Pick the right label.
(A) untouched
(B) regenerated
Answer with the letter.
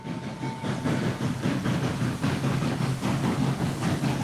B